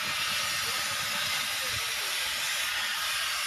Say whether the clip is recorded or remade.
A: recorded